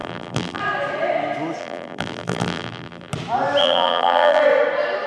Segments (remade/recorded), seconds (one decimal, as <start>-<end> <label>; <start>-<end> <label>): 0.0-0.6 remade; 0.6-1.6 recorded; 1.6-3.1 remade; 3.1-3.6 recorded; 3.6-4.4 remade; 4.4-5.1 recorded